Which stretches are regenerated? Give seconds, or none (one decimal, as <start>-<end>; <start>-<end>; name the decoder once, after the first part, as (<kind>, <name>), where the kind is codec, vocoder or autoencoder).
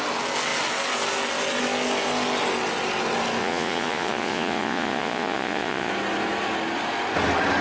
3.4-5.9 (vocoder, Vocos)